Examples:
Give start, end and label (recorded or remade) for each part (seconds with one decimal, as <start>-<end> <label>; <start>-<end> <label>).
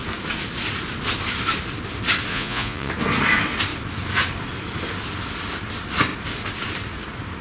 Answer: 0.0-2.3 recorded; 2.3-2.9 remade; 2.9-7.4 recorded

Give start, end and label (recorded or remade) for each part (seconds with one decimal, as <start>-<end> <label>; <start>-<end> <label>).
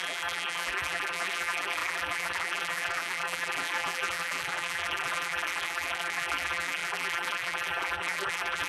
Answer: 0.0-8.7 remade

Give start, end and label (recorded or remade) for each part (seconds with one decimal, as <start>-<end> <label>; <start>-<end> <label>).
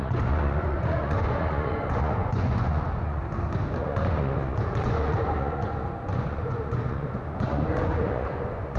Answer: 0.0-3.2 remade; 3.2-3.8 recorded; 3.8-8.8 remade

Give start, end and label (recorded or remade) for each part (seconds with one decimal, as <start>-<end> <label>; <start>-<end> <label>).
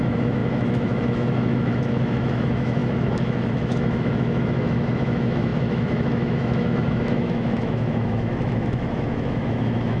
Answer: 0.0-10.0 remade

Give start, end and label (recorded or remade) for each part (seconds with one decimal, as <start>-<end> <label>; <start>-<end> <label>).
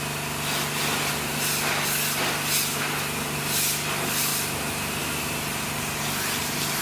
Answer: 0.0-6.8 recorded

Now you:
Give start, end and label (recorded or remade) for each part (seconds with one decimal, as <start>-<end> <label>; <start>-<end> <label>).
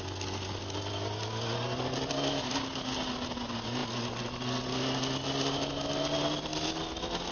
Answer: 0.0-7.3 recorded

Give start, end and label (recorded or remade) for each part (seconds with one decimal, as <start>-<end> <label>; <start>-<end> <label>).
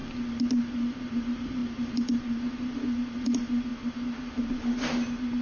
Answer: 0.0-0.6 recorded; 0.6-3.7 remade; 3.7-4.4 recorded; 4.4-5.4 remade